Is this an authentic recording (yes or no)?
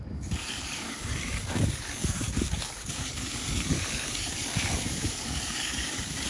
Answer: no